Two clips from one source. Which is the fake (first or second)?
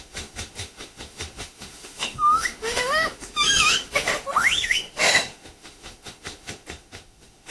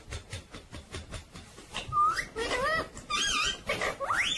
first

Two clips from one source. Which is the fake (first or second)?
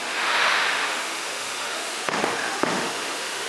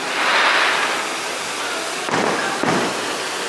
first